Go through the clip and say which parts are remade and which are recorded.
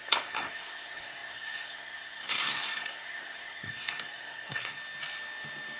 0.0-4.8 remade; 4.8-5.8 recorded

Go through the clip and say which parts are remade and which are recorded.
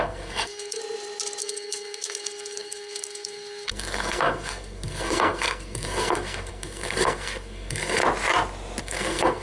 0.0-0.8 remade; 0.8-1.4 recorded; 1.4-8.0 remade; 8.0-8.8 recorded; 8.8-9.4 remade